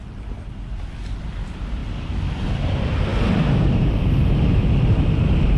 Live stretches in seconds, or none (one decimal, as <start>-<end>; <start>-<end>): 0.0-3.1; 4.6-5.6

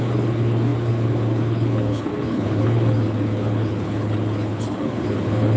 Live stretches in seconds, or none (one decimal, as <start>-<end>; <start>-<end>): none

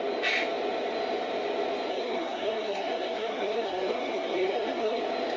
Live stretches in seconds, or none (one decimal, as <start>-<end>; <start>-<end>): 0.0-1.9; 5.0-5.4

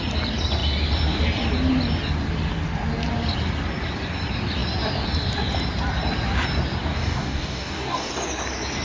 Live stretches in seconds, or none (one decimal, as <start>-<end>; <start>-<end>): 0.0-6.9; 8.1-8.8

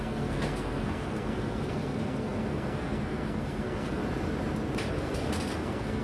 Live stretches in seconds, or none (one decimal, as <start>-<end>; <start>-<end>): 4.0-4.9